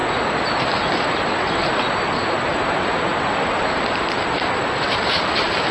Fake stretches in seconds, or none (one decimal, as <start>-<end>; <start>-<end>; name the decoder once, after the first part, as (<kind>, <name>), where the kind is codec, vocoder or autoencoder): none